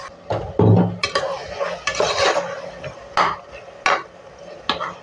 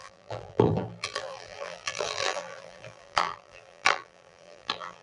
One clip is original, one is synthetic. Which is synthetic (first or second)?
second